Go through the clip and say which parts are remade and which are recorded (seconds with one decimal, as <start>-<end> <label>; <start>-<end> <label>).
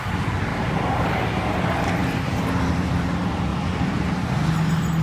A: 0.0-0.5 recorded; 0.5-1.6 remade; 1.6-2.0 recorded; 2.0-3.1 remade; 3.1-5.0 recorded